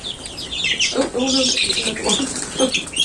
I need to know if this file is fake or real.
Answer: real